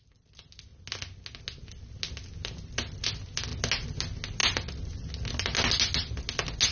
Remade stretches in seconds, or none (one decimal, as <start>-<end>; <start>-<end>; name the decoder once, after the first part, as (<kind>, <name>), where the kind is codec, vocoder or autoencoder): none